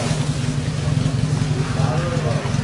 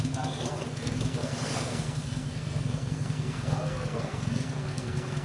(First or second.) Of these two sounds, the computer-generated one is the second